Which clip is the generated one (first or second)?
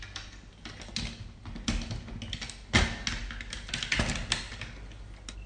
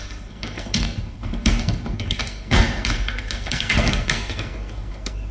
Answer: second